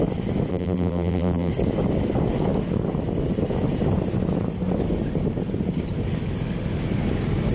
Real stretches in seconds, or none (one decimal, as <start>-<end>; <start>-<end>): 0.0-0.5; 1.5-7.5